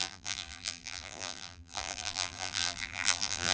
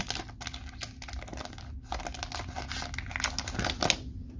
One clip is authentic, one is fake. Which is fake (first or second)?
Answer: first